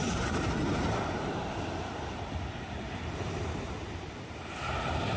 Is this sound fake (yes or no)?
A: yes